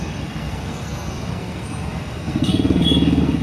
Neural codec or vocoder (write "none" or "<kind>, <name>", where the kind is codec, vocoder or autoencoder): codec, SNAC